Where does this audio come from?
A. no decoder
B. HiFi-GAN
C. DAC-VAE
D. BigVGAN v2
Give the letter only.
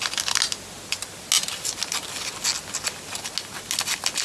A